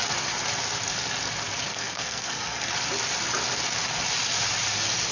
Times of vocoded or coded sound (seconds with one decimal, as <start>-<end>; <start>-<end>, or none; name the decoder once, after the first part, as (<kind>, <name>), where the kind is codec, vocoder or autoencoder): 1.7-2.7 (codec, SNAC)